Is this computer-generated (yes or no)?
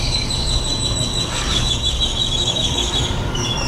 yes